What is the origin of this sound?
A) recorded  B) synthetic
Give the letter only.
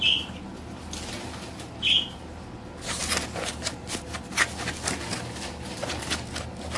A